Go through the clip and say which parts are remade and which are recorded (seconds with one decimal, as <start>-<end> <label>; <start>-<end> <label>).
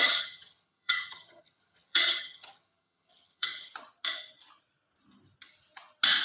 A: 0.0-3.7 remade; 3.7-6.2 recorded